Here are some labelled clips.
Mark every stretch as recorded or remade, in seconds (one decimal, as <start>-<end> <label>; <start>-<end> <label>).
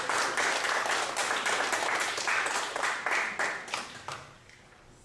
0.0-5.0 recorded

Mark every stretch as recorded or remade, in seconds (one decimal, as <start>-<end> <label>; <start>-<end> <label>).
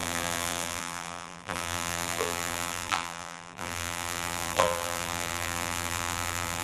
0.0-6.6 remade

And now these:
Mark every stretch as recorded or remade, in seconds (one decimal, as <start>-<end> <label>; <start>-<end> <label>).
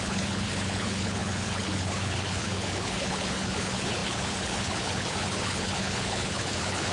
0.0-6.9 remade